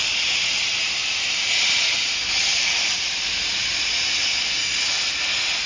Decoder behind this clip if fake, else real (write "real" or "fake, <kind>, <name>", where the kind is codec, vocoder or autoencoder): real